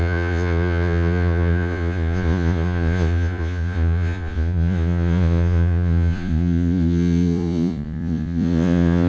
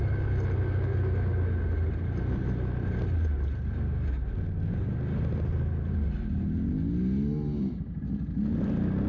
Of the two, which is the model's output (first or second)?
first